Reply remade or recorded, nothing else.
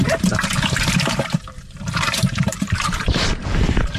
remade